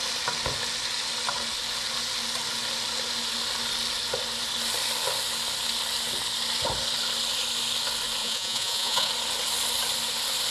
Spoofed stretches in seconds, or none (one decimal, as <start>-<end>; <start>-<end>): 8.2-9.1

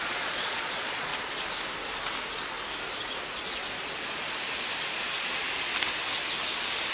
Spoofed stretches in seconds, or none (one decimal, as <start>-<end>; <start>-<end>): 0.0-1.1; 5.2-5.7

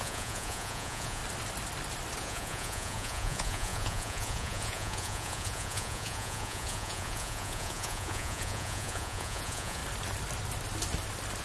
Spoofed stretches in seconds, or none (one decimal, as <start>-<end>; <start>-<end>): 0.0-1.2; 2.2-9.8

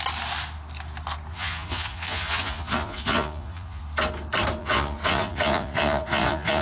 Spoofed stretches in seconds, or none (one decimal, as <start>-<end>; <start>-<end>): 1.3-3.8; 4.6-6.6

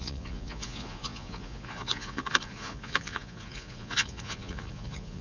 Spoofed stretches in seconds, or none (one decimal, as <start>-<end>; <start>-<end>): 0.0-5.2

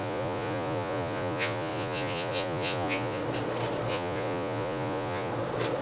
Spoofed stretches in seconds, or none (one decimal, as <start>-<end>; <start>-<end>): 0.0-3.2; 3.9-5.3